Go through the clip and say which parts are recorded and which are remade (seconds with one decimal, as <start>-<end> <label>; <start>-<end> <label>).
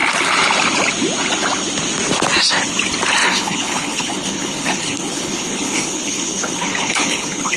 0.0-3.2 recorded; 3.2-7.6 remade